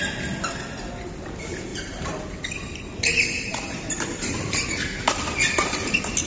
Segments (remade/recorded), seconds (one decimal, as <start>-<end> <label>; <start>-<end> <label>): 0.0-1.7 recorded; 1.7-2.2 remade; 2.2-3.5 recorded; 3.5-4.7 remade; 4.7-6.3 recorded